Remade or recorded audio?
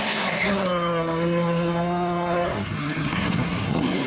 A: remade